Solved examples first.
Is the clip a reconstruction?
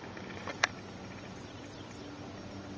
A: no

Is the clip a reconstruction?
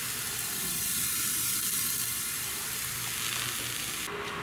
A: no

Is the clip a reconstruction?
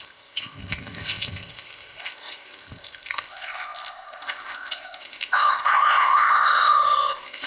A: yes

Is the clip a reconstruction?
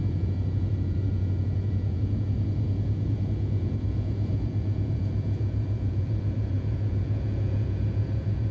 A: yes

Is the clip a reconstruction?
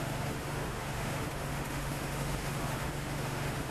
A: yes